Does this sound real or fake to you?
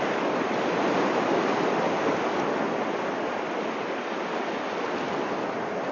real